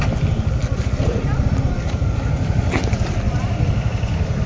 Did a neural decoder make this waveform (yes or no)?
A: no